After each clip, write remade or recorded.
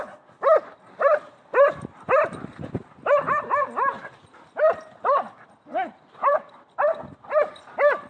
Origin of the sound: recorded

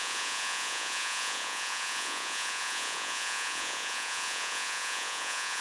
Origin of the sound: remade